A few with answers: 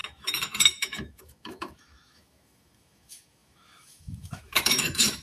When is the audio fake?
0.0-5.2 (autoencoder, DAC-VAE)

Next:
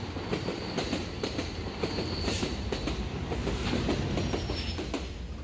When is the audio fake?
1.0-3.6 (vocoder, BigVGAN v2)

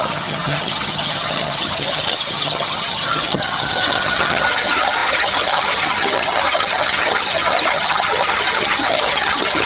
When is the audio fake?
0.0-9.7 (vocoder, HiFi-GAN)

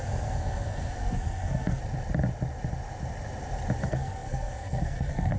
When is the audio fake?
0.0-1.8 (codec, SNAC); 3.8-5.4

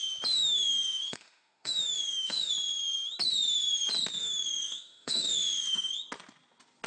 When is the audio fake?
0.4-2.5 (autoencoder, DAC-VAE); 4.2-5.9

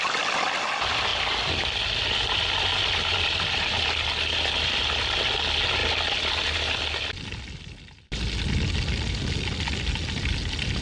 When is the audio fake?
1.1-4.8 (vocoder, BigVGAN v2); 5.8-6.3